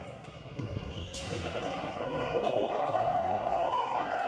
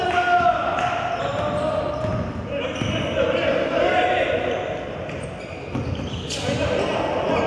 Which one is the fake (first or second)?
first